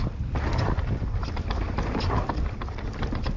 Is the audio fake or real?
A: fake